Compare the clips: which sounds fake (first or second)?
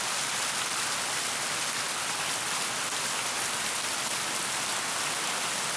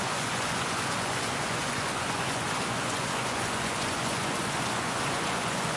second